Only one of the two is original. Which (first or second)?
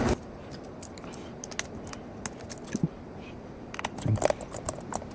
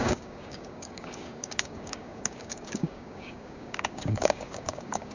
first